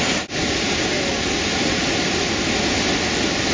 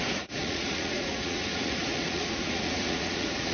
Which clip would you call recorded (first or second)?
first